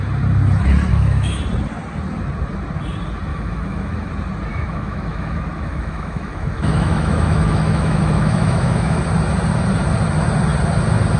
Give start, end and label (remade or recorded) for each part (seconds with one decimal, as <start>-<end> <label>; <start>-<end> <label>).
0.0-0.9 recorded; 0.9-1.4 remade; 1.4-3.3 recorded; 3.3-4.1 remade; 4.1-4.5 recorded; 4.5-9.0 remade; 9.0-11.2 recorded